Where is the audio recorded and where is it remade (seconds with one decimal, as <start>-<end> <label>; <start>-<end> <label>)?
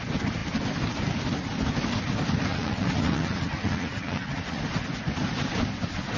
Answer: 0.0-2.5 recorded; 2.5-4.6 remade; 4.6-6.2 recorded